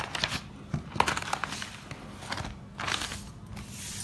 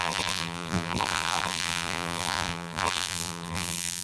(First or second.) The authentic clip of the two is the first